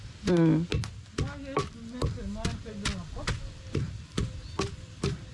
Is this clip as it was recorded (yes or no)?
yes